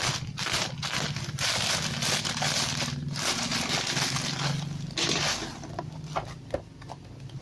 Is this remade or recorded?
recorded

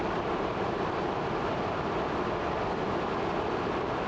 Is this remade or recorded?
recorded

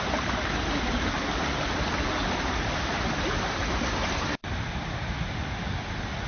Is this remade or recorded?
recorded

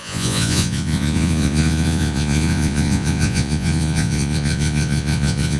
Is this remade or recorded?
remade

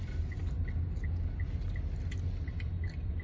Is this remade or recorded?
recorded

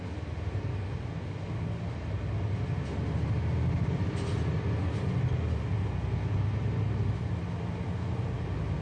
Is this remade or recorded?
recorded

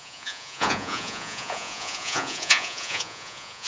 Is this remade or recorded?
remade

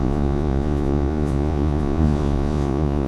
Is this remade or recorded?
remade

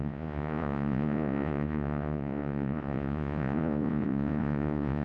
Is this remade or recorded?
remade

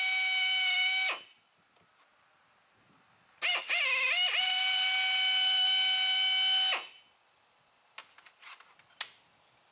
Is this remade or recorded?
recorded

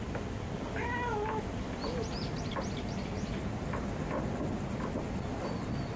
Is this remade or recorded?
recorded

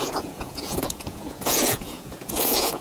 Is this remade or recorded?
remade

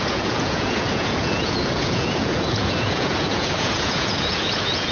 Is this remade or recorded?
remade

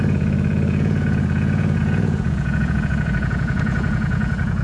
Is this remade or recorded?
remade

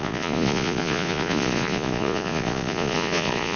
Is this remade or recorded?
remade